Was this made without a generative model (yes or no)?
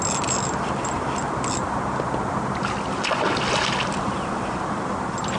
yes